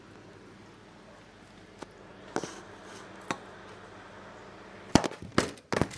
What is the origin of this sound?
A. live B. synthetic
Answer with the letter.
A